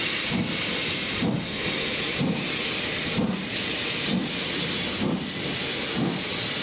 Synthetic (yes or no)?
no